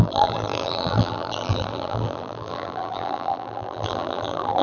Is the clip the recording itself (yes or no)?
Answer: no